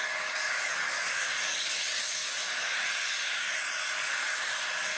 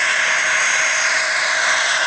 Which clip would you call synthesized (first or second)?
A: first